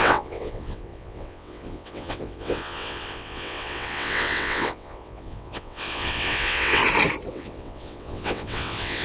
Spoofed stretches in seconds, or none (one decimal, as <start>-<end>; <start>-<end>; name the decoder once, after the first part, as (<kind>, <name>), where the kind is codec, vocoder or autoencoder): 0.0-6.8 (vocoder, WaveNeXt); 7.3-9.0